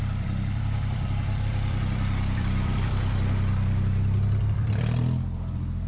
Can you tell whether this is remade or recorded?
remade